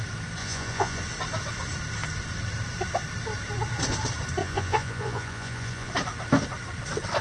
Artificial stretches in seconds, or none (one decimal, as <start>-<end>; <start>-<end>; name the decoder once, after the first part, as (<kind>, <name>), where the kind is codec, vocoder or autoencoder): 0.4-1.0 (vocoder, Vocos); 4.4-5.9